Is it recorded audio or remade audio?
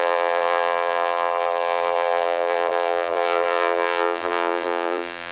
remade